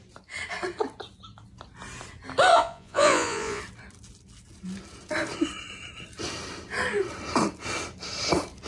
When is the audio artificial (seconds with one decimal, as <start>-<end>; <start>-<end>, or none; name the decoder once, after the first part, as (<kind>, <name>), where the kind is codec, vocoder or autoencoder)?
2.5-3.6 (vocoder, Vocos)